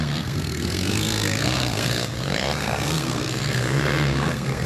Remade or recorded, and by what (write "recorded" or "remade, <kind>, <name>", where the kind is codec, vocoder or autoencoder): remade, codec, SNAC